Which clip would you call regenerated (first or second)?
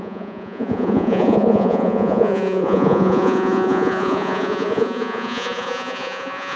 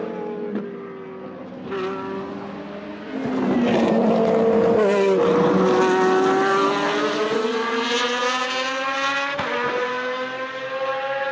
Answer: first